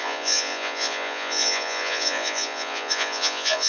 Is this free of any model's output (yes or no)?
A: no